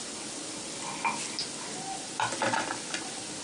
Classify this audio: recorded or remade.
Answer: recorded